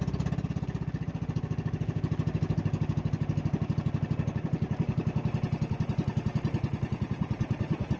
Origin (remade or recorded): recorded